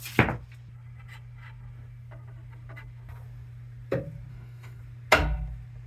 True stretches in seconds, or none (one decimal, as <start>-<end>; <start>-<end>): 0.0-4.3; 4.8-5.9